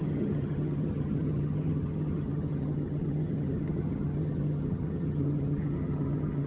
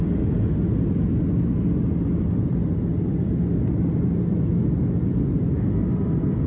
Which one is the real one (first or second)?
second